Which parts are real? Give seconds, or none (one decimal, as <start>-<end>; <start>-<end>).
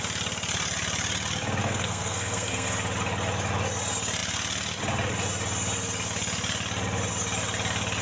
0.0-1.6; 2.7-8.0